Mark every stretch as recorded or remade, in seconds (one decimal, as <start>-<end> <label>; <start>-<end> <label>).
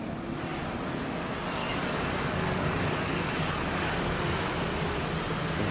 0.0-1.6 recorded; 1.6-3.9 remade; 3.9-5.7 recorded